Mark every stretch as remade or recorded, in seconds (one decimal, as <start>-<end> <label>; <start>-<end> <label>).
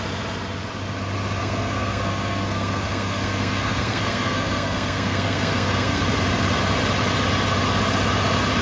0.0-1.4 recorded; 1.4-6.0 remade; 6.0-8.6 recorded